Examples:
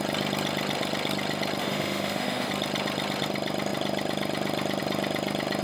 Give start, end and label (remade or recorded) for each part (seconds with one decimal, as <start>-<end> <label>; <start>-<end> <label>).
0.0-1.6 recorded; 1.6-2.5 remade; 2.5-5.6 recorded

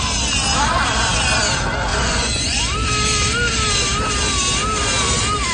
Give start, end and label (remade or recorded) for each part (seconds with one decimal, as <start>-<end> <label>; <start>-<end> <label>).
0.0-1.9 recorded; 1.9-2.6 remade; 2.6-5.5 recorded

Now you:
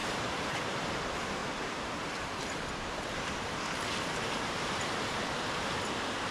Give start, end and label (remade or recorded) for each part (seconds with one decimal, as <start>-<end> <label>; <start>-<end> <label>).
0.0-1.0 remade; 1.0-1.4 recorded; 1.4-5.2 remade; 5.2-6.3 recorded

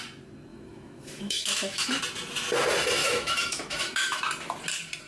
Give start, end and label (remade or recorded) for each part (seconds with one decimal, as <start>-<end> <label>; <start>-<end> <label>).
0.0-0.5 recorded; 0.5-2.0 remade; 2.0-3.0 recorded; 3.0-4.2 remade; 4.2-5.1 recorded

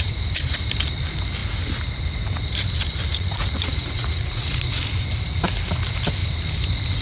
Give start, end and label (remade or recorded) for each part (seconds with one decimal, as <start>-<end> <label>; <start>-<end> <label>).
0.0-3.1 recorded; 3.1-4.8 remade; 4.8-7.0 recorded

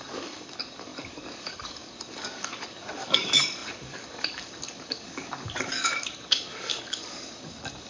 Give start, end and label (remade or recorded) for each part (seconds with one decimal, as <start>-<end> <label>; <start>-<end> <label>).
0.0-7.9 remade